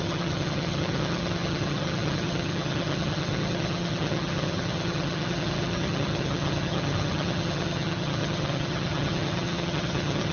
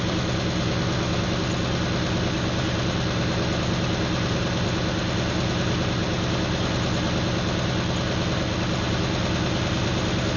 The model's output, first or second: first